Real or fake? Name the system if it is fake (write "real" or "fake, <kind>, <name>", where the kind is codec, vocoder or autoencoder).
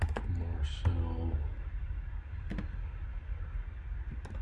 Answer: real